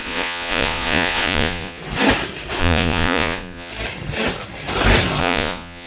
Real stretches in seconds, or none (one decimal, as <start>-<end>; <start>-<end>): 1.8-2.6; 3.7-5.2